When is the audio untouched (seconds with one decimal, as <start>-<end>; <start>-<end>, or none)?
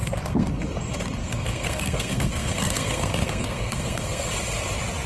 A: 0.5-1.2; 4.3-5.1